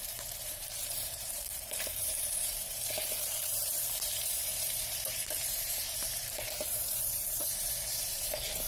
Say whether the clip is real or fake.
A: fake